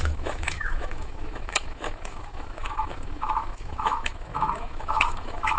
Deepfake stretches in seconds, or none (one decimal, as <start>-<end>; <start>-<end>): 0.0-5.6